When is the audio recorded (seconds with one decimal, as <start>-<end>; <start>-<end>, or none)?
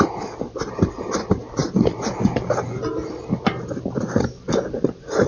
0.0-5.3